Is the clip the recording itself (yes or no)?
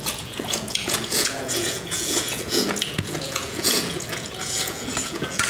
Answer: no